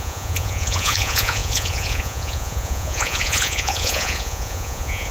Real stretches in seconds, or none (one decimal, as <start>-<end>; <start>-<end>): none